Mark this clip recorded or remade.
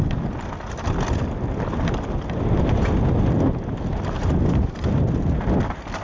recorded